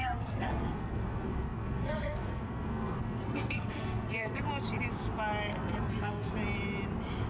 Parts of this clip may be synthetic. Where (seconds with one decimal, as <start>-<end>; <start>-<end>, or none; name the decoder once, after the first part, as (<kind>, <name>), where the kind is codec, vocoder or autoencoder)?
0.0-4.4 (codec, SNAC); 5.5-6.3